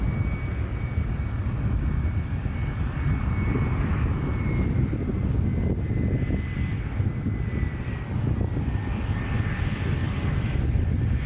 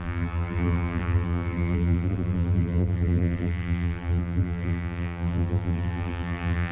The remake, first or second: second